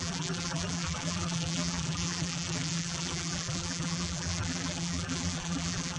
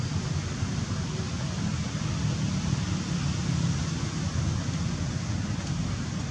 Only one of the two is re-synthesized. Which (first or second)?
first